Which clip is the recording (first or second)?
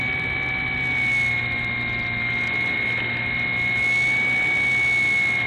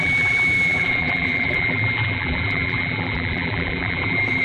first